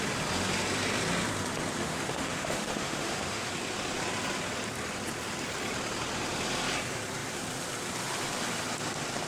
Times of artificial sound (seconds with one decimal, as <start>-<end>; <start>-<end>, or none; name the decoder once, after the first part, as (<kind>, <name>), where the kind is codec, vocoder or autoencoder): 1.8-3.5 (autoencoder, DAC-VAE)